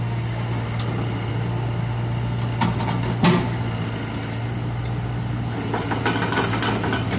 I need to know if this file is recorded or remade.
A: recorded